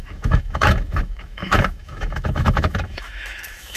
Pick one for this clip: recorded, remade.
remade